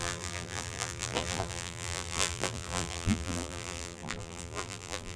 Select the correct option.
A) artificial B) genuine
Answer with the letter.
A